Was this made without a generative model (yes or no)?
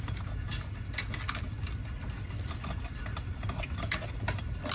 yes